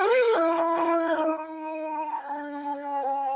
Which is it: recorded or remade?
remade